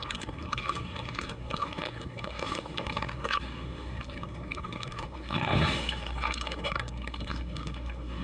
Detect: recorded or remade remade